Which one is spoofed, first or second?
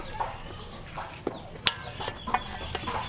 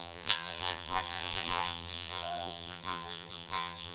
second